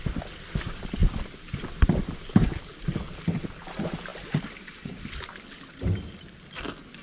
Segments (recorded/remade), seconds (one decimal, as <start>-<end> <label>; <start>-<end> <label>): 0.0-1.0 recorded; 1.0-2.7 remade; 2.7-7.0 recorded